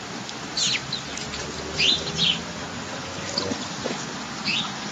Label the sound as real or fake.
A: real